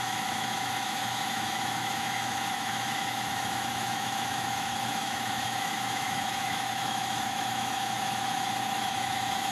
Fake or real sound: fake